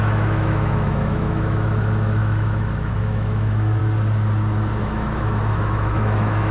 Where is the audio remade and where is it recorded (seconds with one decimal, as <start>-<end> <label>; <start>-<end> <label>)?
0.0-3.8 remade; 3.8-4.8 recorded; 4.8-6.5 remade